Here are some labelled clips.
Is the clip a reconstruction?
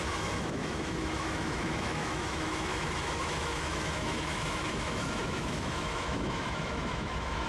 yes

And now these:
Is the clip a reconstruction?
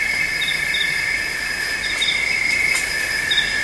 no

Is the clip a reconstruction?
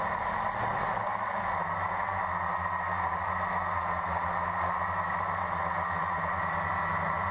no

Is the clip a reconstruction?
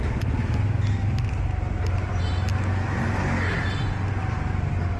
no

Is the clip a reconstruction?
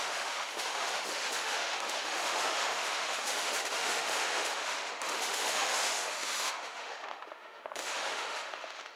yes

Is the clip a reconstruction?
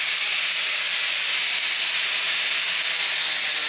no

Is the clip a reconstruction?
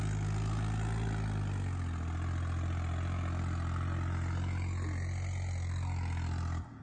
no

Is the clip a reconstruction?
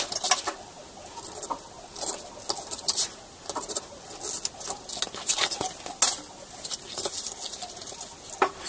no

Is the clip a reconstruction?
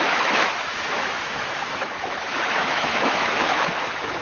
yes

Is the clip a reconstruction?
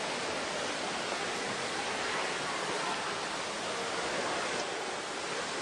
no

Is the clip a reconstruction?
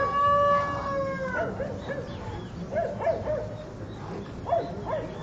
no